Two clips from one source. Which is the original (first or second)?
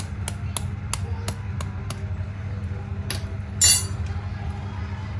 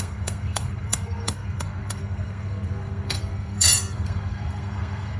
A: first